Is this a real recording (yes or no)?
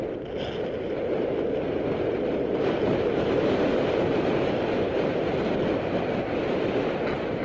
yes